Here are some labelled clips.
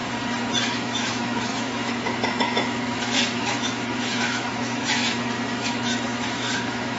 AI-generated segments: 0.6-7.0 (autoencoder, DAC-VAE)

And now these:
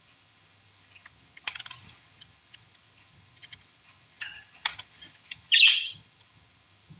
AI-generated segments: 0.0-7.0 (vocoder, HiFi-GAN)

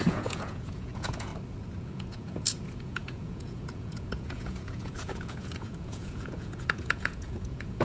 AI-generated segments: 0.0-1.3 (vocoder, Vocos); 1.8-7.8

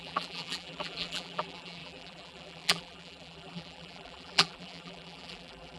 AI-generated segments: 0.0-5.8 (vocoder, BigVGAN v2)